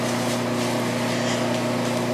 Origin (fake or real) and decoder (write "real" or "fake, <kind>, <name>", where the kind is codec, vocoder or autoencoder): real